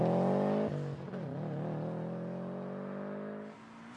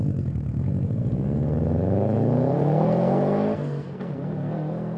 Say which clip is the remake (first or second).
second